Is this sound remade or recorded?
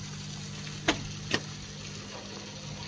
recorded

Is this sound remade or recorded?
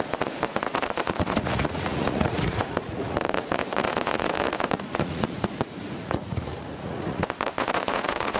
remade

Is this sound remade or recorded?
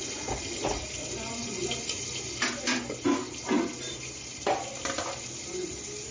recorded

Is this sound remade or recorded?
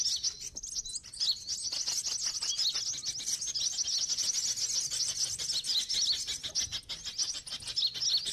recorded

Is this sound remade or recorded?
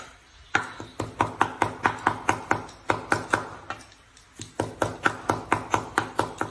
recorded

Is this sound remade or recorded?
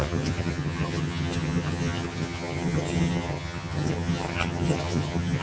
remade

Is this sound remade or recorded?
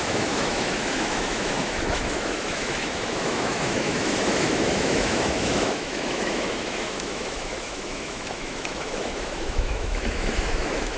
remade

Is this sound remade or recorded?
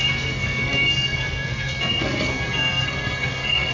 remade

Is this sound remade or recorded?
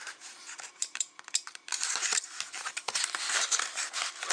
remade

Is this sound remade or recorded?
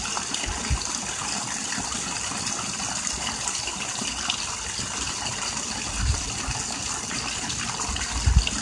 recorded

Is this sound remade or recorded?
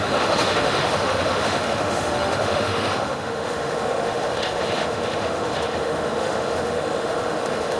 remade